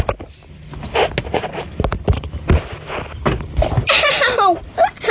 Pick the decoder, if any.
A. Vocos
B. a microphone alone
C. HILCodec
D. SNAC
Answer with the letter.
B